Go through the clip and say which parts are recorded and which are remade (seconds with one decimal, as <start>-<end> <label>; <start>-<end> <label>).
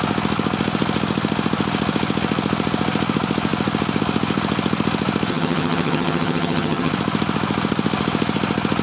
0.0-5.3 recorded; 5.3-6.9 remade; 6.9-8.8 recorded